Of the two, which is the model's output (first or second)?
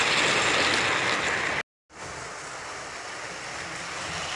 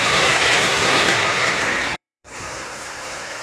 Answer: second